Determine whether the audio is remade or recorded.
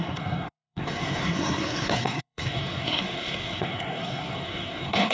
remade